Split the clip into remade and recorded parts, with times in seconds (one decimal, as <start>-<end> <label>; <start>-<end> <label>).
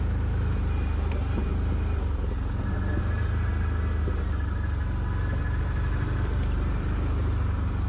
0.0-1.5 remade; 1.5-3.0 recorded; 3.0-3.5 remade; 3.5-5.6 recorded; 5.6-7.9 remade